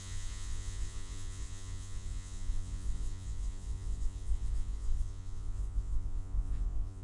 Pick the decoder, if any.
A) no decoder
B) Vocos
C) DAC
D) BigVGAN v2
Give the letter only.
B